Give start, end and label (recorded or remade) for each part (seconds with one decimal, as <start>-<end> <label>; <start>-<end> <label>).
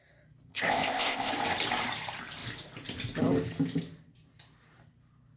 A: 0.0-0.5 recorded; 0.5-1.3 remade; 1.3-5.4 recorded